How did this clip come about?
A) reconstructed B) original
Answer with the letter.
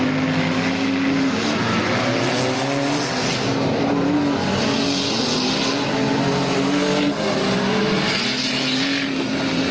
B